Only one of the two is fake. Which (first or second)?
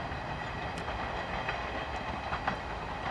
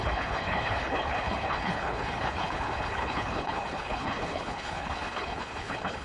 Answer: second